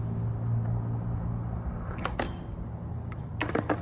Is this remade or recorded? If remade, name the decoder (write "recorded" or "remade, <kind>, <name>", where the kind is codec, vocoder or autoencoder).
recorded